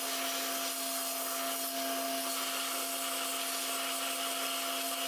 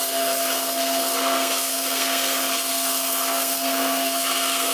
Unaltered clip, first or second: first